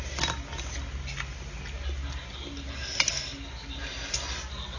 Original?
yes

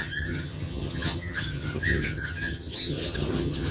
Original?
no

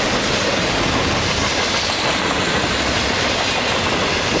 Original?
yes